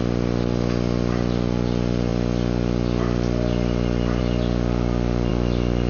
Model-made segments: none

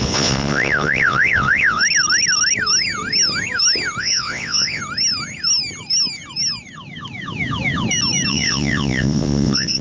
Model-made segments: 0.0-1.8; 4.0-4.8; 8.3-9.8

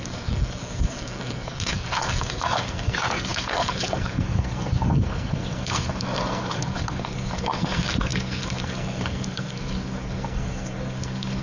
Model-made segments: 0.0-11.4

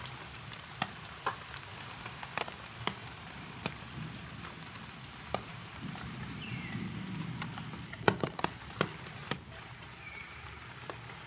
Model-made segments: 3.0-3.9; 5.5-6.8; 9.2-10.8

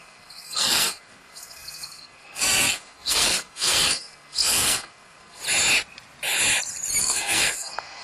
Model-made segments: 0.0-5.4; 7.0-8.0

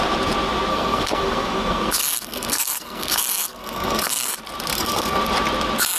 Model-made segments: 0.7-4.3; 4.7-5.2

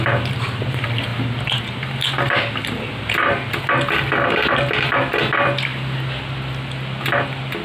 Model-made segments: none

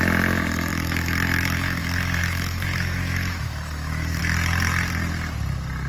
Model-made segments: 0.7-4.2